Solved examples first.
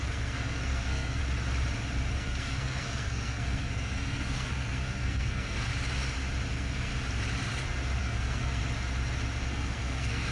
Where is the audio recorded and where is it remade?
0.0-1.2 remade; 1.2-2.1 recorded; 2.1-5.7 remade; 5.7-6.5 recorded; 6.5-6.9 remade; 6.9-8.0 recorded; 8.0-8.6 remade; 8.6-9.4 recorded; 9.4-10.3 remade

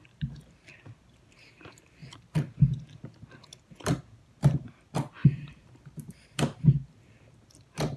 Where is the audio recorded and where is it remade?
0.0-5.2 recorded; 5.2-6.6 remade; 6.6-8.0 recorded

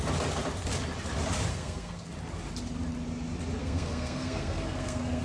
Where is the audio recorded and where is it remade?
0.0-1.5 recorded; 1.5-2.1 remade; 2.1-3.6 recorded; 3.6-5.2 remade

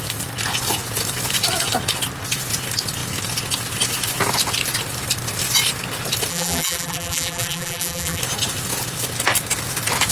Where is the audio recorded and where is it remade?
0.0-6.3 recorded; 6.3-8.2 remade; 8.2-10.1 recorded

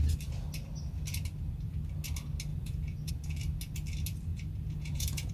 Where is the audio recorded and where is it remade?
0.0-2.5 recorded; 2.5-3.1 remade; 3.1-4.3 recorded; 4.3-5.3 remade

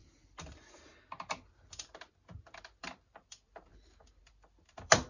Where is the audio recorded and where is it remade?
0.0-2.6 recorded; 2.6-3.7 remade; 3.7-4.2 recorded; 4.2-5.1 remade

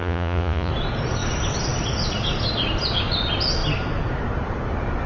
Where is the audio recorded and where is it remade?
0.0-0.7 remade; 0.7-5.1 recorded

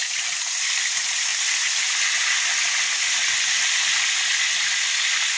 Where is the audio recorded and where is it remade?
0.0-5.4 recorded